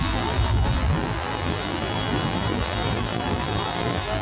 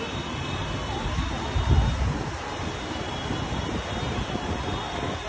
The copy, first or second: first